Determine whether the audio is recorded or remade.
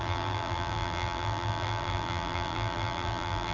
remade